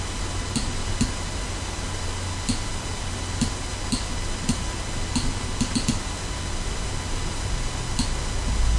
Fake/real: real